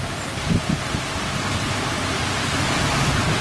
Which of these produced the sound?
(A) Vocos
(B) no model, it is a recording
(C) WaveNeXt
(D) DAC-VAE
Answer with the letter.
B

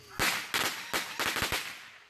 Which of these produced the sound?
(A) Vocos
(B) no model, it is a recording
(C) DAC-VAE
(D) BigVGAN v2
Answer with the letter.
B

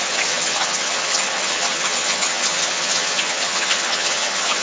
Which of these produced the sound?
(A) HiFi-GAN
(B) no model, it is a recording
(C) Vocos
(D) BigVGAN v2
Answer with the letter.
A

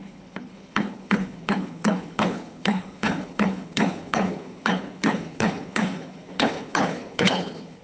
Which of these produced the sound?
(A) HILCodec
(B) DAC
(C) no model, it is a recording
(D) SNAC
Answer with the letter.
A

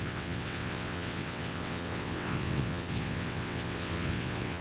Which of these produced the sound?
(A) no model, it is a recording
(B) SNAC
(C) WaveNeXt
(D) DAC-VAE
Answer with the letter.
C